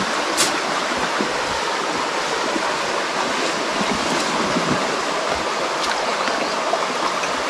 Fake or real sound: real